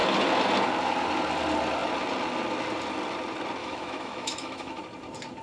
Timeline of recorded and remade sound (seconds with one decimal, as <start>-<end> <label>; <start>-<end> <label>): 0.0-3.6 recorded; 3.6-4.8 remade; 4.8-5.4 recorded